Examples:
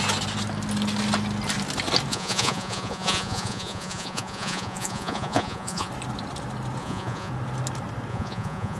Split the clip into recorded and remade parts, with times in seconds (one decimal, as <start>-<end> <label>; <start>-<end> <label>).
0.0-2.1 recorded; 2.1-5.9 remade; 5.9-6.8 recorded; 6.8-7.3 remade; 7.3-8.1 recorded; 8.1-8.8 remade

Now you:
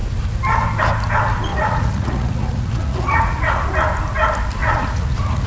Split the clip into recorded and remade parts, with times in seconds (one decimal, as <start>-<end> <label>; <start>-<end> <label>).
0.0-1.5 recorded; 1.5-3.6 remade; 3.6-4.6 recorded; 4.6-5.5 remade

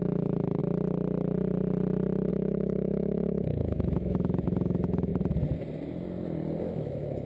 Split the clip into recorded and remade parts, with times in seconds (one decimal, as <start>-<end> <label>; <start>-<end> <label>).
0.0-0.6 remade; 0.6-2.3 recorded; 2.3-5.1 remade; 5.1-6.6 recorded; 6.6-7.3 remade

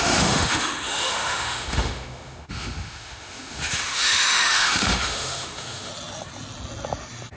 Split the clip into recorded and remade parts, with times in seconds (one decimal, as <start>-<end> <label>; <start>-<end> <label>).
0.0-5.9 remade; 5.9-7.4 recorded

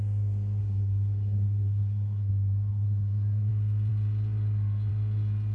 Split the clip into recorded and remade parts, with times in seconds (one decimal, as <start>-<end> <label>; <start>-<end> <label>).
0.0-0.6 recorded; 0.6-2.3 remade; 2.3-2.7 recorded; 2.7-3.5 remade; 3.5-5.5 recorded

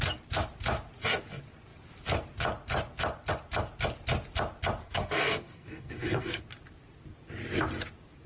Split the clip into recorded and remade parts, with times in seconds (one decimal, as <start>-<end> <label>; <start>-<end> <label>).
0.0-4.8 recorded; 4.8-6.4 remade; 6.4-8.3 recorded

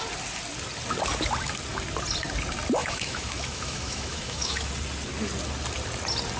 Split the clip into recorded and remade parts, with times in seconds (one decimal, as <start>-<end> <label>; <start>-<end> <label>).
0.0-2.8 recorded; 2.8-4.7 remade; 4.7-6.4 recorded

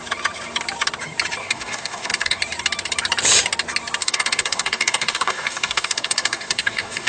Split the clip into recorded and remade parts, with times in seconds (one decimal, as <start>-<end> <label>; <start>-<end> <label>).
0.0-1.4 recorded; 1.4-2.4 remade; 2.4-4.0 recorded; 4.0-7.1 remade